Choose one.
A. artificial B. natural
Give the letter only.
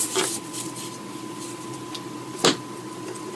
B